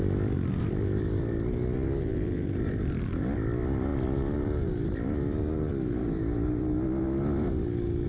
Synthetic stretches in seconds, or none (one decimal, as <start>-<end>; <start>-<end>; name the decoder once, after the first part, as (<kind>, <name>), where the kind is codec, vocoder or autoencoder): 6.0-6.6 (codec, DAC)